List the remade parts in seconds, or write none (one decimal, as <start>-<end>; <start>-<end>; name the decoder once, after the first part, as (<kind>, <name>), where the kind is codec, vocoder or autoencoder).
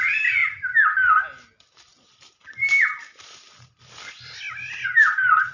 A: none